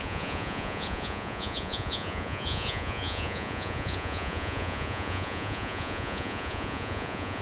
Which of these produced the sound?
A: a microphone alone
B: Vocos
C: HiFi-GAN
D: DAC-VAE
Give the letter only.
B